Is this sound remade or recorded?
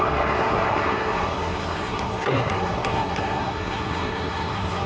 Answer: remade